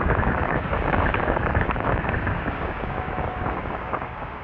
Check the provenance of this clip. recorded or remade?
remade